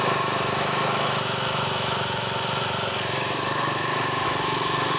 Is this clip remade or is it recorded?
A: remade